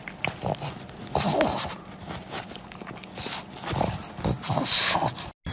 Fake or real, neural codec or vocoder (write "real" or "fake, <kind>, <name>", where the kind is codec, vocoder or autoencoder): real